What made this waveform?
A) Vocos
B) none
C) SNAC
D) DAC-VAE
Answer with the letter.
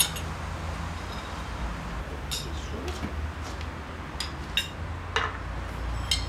B